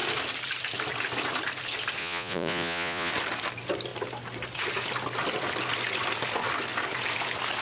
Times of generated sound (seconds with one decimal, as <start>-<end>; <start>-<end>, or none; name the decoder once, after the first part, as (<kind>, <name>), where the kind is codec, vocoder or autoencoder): 2.0-3.1 (vocoder, Vocos)